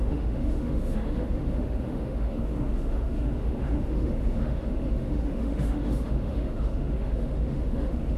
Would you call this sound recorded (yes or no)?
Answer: no